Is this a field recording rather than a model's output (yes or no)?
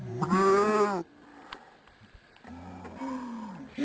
yes